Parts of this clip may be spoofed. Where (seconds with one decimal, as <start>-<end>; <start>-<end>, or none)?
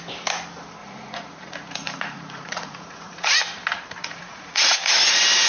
0.8-3.4; 4.0-4.7